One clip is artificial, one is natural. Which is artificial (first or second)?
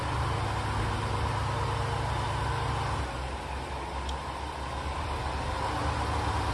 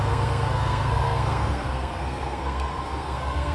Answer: second